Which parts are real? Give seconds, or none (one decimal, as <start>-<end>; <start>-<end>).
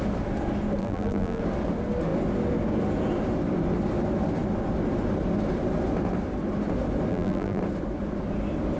0.0-0.8; 1.4-7.1; 7.6-8.8